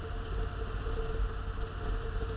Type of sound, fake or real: real